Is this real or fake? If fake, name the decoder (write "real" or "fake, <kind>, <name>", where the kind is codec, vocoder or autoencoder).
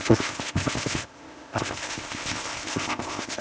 fake, codec, ZipCodec